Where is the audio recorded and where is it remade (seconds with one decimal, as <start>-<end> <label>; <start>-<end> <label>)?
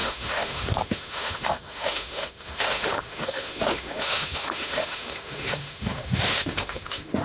0.0-7.2 remade